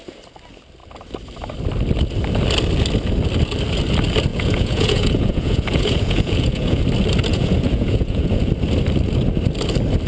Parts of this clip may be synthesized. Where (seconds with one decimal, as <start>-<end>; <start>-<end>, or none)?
4.3-6.8; 7.3-8.5